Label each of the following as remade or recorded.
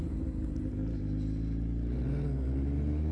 recorded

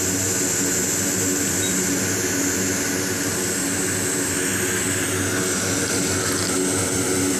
recorded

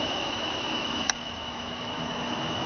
remade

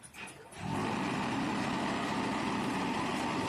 recorded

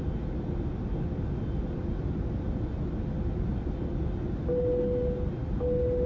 recorded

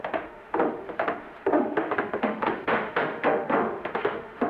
remade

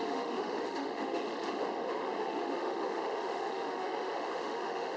remade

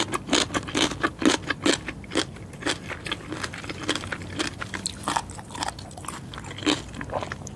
recorded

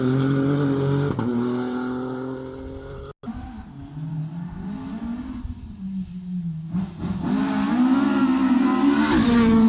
recorded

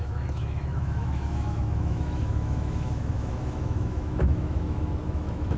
remade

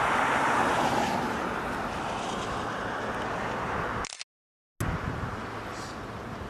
recorded